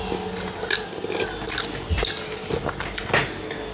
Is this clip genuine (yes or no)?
yes